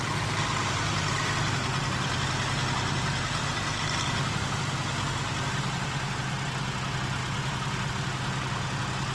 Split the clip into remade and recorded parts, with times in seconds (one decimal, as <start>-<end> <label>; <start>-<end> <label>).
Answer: 0.0-0.6 recorded; 0.6-1.3 remade; 1.3-3.4 recorded; 3.4-4.6 remade; 4.6-9.1 recorded